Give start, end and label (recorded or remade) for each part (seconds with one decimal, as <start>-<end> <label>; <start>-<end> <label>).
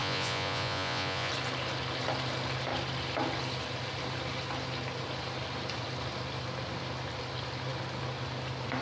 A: 0.0-1.3 remade; 1.3-8.8 recorded